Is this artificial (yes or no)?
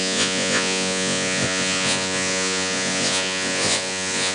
yes